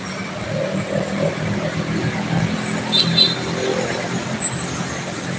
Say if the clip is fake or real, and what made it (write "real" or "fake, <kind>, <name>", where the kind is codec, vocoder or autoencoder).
real